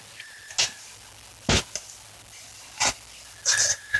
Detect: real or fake real